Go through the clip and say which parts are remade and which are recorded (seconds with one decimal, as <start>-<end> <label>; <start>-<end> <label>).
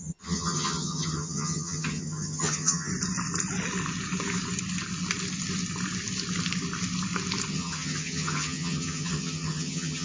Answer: 0.0-2.9 remade; 2.9-7.5 recorded; 7.5-10.0 remade